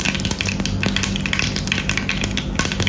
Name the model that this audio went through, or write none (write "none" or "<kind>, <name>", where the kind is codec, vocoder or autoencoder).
none